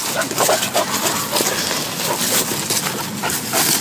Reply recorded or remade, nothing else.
recorded